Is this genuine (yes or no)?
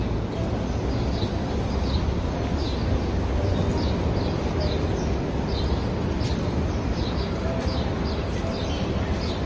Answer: yes